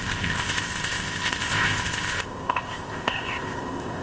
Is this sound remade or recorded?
remade